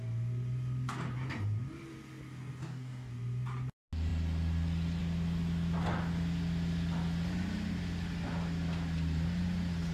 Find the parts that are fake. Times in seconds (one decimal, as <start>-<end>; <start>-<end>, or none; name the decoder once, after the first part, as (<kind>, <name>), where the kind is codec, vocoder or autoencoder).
2.6-3.1 (codec, DAC)